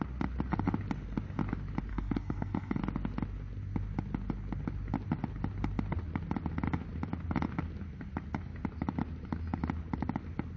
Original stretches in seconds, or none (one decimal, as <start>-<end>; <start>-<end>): 0.0-1.9; 2.8-10.6